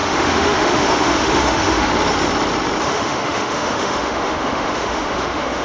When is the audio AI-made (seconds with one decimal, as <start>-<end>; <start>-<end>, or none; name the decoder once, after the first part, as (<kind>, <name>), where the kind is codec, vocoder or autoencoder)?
0.0-1.9 (autoencoder, DAC-VAE); 2.8-5.6